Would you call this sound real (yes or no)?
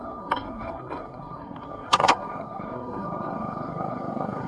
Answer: no